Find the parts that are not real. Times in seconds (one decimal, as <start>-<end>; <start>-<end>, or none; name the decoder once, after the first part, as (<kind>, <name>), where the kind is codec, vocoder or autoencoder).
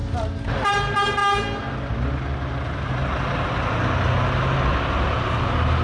none